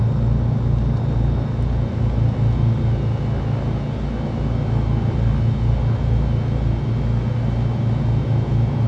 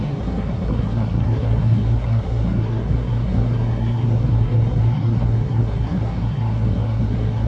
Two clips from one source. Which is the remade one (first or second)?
second